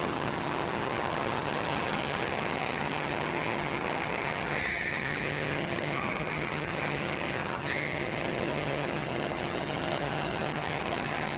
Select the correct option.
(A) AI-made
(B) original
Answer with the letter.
A